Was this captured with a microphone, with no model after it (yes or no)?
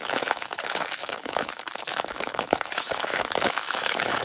no